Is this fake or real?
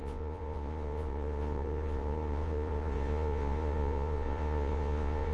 fake